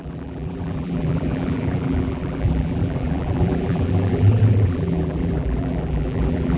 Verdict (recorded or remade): remade